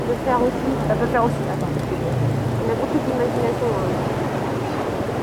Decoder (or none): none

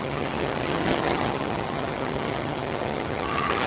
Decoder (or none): vocoder, HiFi-GAN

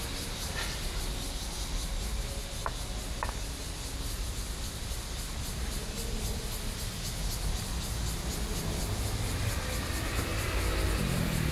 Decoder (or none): none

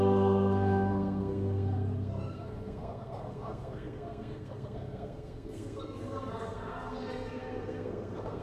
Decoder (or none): codec, SNAC